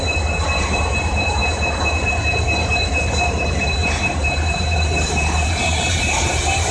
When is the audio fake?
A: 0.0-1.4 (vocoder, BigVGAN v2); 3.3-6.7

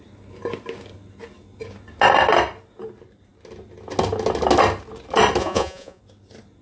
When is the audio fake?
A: 5.4-6.0 (vocoder, Vocos)

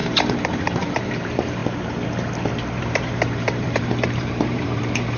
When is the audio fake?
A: 0.0-1.6 (vocoder, BigVGAN v2); 2.8-5.2

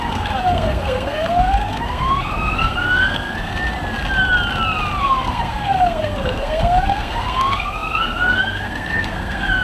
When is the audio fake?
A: 0.0-3.5 (codec, SNAC); 5.0-9.6

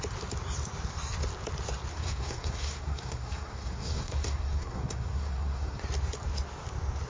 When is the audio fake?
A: 1.9-5.8 (codec, SNAC)

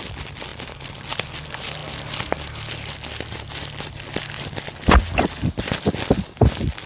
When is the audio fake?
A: none